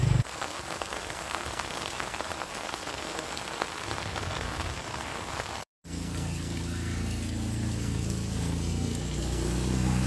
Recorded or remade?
remade